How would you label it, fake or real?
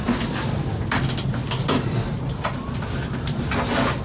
real